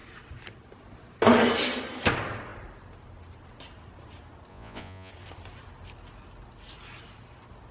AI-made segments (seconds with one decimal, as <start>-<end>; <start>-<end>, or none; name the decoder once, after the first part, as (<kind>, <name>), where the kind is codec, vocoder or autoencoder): 4.5-5.1 (vocoder, Vocos)